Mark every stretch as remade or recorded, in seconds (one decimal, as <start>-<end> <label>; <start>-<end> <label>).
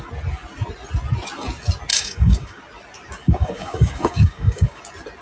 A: 0.0-1.9 recorded; 1.9-2.6 remade; 2.6-3.2 recorded; 3.2-4.8 remade; 4.8-5.2 recorded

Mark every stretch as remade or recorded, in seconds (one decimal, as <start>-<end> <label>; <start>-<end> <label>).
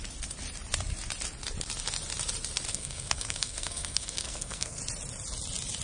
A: 0.0-2.7 recorded; 2.7-4.8 remade; 4.8-5.8 recorded